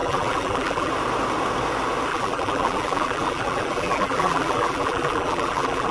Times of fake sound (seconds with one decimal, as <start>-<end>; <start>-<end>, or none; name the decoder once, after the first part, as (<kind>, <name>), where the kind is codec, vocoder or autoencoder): 0.0-0.9 (vocoder, BigVGAN v2); 2.1-5.9